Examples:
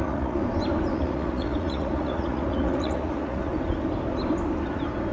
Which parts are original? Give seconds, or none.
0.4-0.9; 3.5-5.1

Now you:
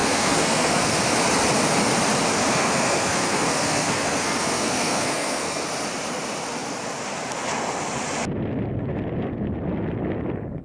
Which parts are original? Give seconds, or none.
1.0-2.5; 5.6-10.6

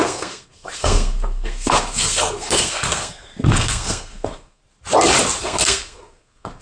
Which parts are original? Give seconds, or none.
4.6-5.4

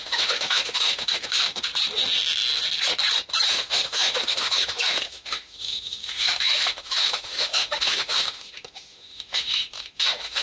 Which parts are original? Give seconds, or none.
1.7-3.5